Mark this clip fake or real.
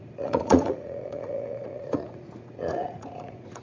fake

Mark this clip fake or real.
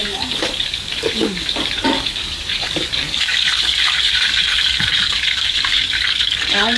fake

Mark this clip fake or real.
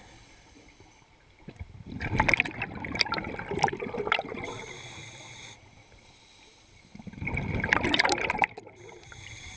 fake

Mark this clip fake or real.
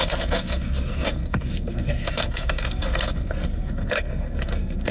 fake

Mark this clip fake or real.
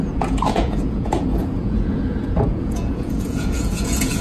fake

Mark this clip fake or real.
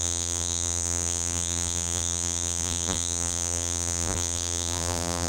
fake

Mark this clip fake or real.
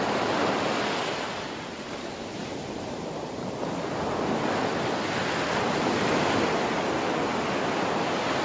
real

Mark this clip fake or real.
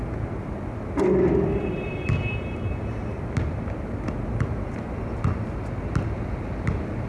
real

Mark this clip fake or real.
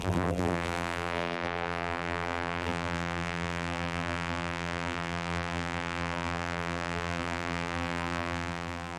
fake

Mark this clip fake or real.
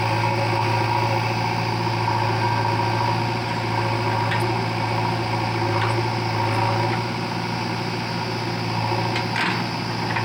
real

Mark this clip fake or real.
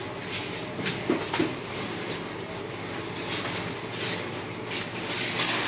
real